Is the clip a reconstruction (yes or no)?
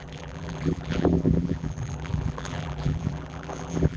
yes